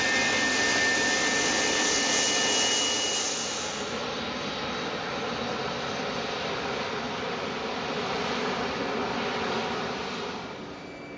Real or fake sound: real